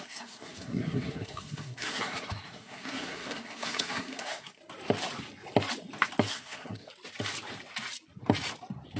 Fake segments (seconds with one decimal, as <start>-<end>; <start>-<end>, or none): 0.0-4.6; 6.3-6.9